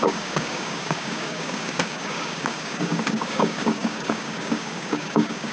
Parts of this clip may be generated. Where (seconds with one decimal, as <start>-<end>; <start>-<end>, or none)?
0.0-5.5